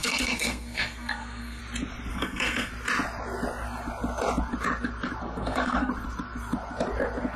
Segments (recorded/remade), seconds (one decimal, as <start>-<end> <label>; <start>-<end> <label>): 0.0-1.6 remade; 1.6-2.1 recorded; 2.1-2.7 remade; 2.7-5.2 recorded; 5.2-5.9 remade; 5.9-7.4 recorded